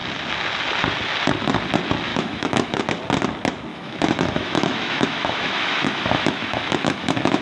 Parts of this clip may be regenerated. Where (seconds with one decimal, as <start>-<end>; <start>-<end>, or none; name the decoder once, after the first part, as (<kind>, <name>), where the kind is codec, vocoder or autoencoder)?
2.1-2.8 (autoencoder, DAC-VAE); 3.7-7.4